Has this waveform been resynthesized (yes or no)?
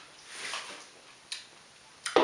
no